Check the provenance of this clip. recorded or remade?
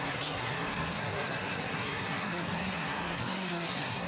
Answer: remade